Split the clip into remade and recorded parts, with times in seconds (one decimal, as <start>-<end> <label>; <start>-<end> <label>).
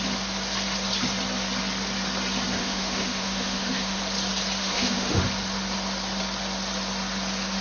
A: 0.0-2.6 recorded; 2.6-4.0 remade; 4.0-4.6 recorded; 4.6-5.2 remade; 5.2-7.6 recorded